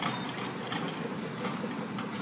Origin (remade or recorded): recorded